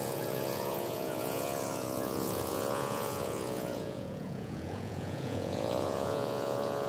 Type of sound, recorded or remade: remade